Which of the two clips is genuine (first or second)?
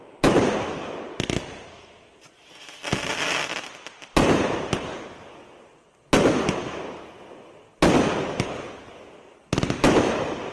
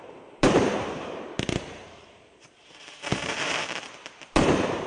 first